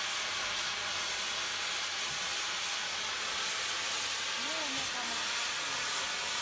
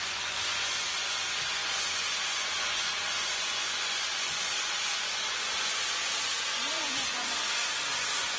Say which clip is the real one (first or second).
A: first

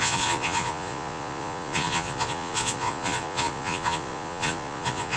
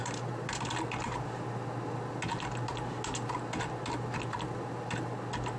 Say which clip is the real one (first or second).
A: second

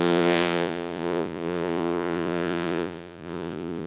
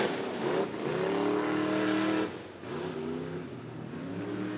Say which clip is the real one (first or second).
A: second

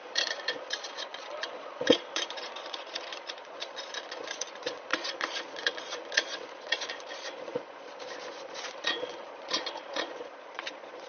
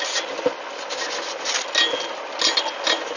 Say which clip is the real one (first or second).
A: second